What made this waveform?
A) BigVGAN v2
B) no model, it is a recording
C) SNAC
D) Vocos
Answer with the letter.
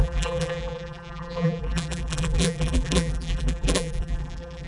A